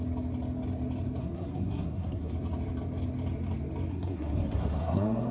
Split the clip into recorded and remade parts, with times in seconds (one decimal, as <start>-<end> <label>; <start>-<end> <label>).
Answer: 0.0-1.2 recorded; 1.2-2.3 remade; 2.3-3.9 recorded; 3.9-5.3 remade